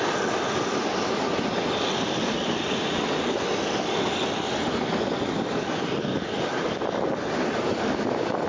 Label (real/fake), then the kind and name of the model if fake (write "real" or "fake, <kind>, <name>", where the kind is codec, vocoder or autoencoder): real